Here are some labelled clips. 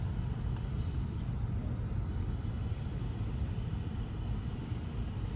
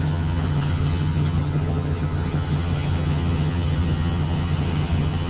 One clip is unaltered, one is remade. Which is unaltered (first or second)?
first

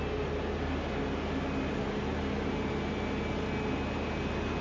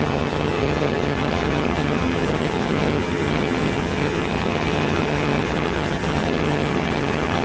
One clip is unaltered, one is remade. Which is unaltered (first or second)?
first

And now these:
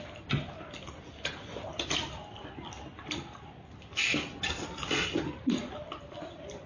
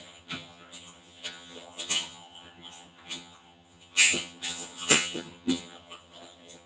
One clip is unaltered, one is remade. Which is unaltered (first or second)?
first